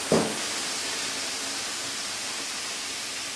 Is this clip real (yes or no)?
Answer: yes